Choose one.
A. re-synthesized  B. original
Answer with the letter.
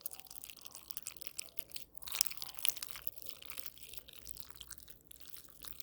B